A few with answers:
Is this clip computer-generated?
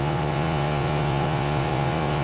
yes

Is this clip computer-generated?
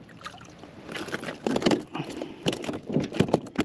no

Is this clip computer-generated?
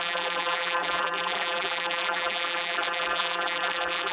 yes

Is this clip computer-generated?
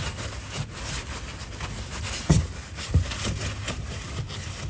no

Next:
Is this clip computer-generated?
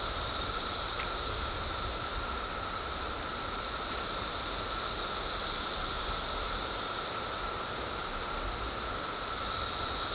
yes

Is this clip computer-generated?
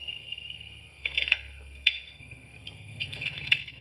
yes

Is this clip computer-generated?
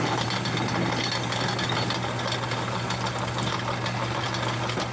no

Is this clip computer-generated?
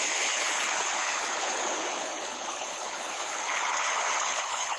yes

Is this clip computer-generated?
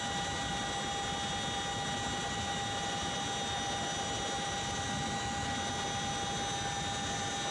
no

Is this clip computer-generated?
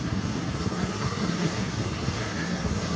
yes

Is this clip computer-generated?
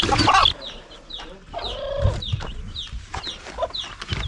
no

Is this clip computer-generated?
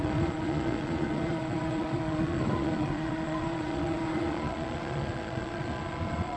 yes